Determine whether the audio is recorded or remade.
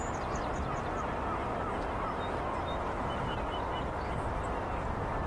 recorded